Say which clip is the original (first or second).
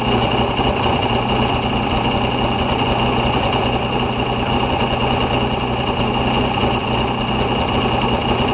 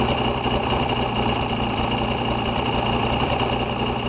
second